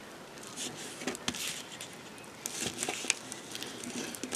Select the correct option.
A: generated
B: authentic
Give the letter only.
B